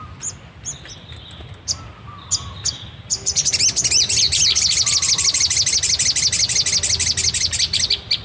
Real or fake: real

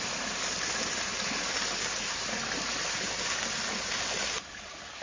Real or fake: real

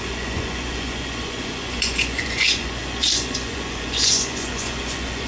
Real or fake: fake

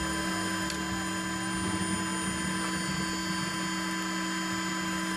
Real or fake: real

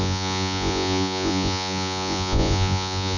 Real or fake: fake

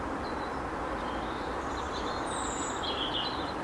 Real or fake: real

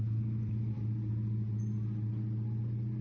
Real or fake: real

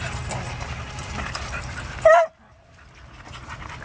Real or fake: real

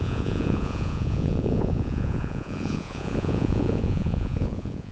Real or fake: fake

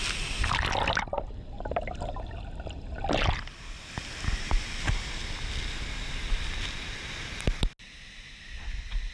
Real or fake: real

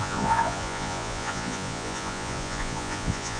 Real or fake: fake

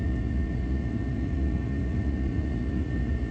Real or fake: fake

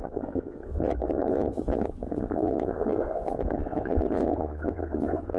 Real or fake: fake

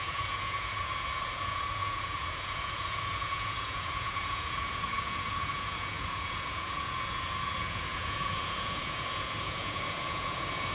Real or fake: fake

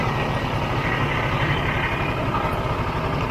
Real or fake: real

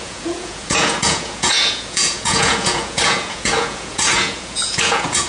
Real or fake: fake